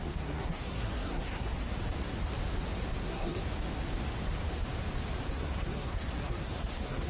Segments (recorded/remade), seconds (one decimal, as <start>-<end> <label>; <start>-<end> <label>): 0.0-1.7 remade; 1.7-3.0 recorded; 3.0-3.4 remade; 3.4-5.3 recorded; 5.3-7.1 remade